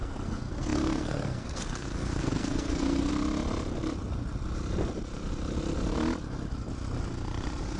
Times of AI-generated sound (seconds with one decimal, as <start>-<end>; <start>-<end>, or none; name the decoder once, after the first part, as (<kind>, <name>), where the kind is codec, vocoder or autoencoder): 0.0-3.1 (codec, SNAC)